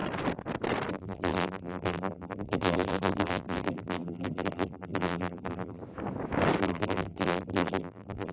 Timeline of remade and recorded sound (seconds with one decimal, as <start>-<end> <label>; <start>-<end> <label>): 0.0-0.9 recorded; 0.9-5.8 remade; 5.8-6.6 recorded; 6.6-8.3 remade